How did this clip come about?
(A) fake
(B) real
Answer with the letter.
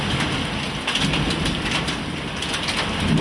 B